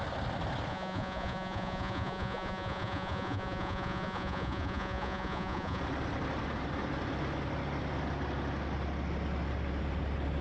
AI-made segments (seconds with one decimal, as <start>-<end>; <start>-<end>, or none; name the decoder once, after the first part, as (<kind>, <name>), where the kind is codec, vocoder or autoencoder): 0.7-5.8 (vocoder, Vocos)